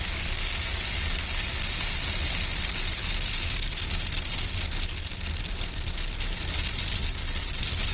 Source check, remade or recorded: recorded